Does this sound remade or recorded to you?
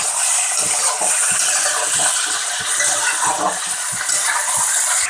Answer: recorded